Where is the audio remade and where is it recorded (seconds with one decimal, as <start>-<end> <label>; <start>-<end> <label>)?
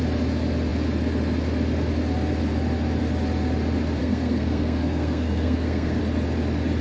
0.0-4.0 recorded; 4.0-6.0 remade; 6.0-6.8 recorded